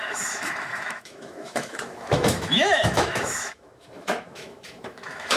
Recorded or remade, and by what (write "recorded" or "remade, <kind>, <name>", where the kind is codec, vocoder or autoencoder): remade, autoencoder, DAC-VAE